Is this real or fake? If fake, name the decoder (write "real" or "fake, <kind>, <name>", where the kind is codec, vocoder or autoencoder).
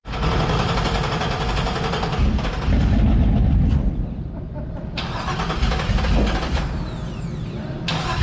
real